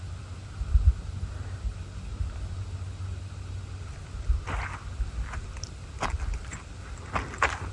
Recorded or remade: recorded